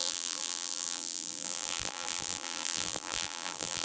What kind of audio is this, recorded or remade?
remade